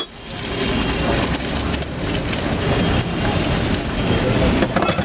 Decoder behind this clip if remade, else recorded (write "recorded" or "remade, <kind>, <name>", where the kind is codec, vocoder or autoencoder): recorded